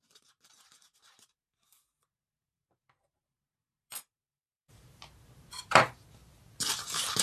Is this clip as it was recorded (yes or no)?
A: no